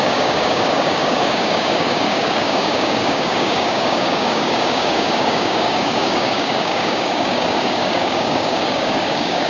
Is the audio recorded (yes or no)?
no